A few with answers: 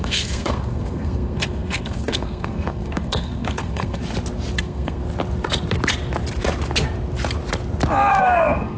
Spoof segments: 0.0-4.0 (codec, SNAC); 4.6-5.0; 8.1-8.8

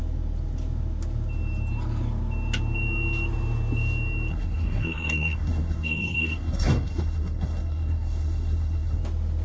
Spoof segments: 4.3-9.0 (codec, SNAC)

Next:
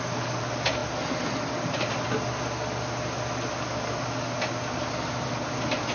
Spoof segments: none

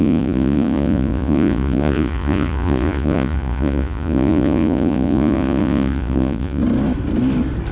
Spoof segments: 0.0-6.6 (vocoder, Vocos)

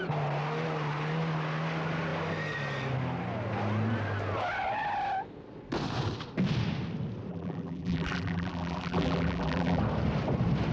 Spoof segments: 7.3-9.8 (vocoder, BigVGAN v2)

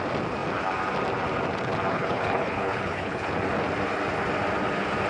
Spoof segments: 1.9-3.3 (codec, HILCodec)